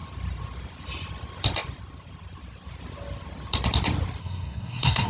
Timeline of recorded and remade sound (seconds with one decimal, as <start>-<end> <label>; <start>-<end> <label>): 0.0-4.2 recorded; 4.2-5.1 remade